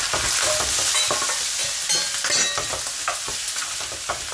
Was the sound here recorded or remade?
recorded